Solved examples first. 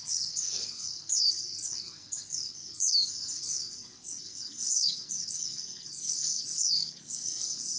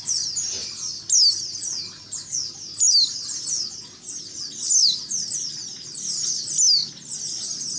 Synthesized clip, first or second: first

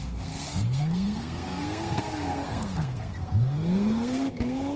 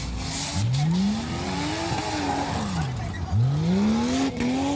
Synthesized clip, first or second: first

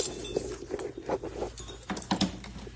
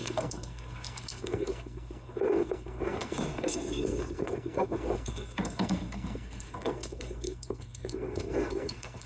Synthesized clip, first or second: second